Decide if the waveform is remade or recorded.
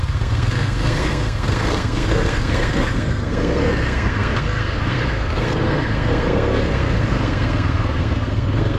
remade